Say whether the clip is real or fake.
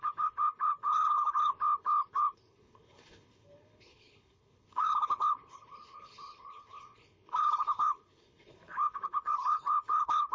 fake